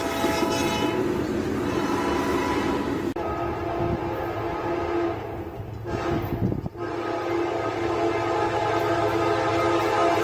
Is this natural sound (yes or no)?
yes